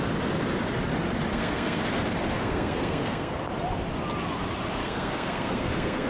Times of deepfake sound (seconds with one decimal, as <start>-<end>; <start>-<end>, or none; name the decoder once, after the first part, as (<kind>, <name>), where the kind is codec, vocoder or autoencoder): 1.3-1.8 (codec, SNAC); 2.4-3.4; 4.8-6.1